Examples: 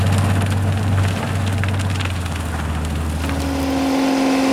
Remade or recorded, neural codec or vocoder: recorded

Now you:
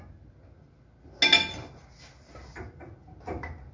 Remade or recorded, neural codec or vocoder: recorded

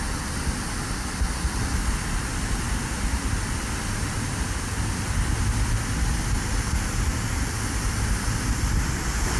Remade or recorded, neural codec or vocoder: recorded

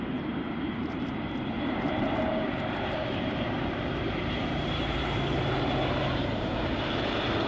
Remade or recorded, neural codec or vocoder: remade, vocoder, BigVGAN v2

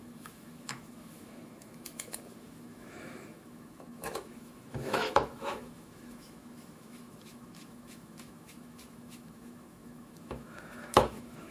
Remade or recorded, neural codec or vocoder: remade, autoencoder, DAC-VAE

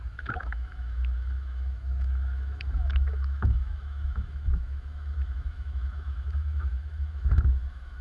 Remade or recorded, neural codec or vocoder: remade, autoencoder, DAC-VAE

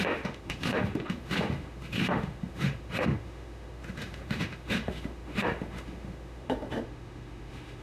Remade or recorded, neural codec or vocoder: remade, autoencoder, DAC-VAE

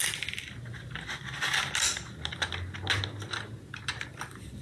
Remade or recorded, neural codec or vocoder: recorded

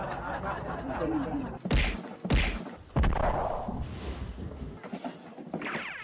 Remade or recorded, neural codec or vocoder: recorded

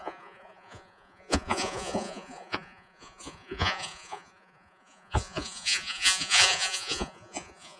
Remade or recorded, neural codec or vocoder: remade, vocoder, Vocos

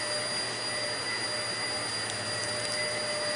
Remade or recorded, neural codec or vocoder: recorded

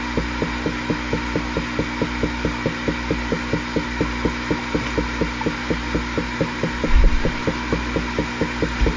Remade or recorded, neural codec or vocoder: recorded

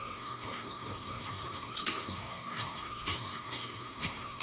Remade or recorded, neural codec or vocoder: remade, codec, SNAC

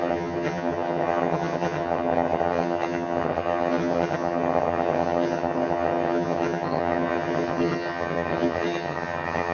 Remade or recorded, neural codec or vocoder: remade, vocoder, HiFi-GAN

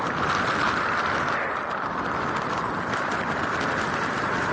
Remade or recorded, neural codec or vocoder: remade, vocoder, BigVGAN v2